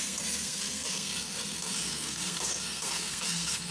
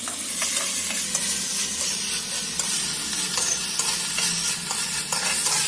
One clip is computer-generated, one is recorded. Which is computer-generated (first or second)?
first